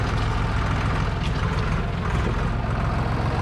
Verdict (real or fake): real